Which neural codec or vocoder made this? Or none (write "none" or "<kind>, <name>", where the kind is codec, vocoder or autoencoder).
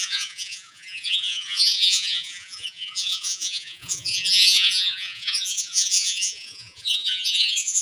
vocoder, Vocos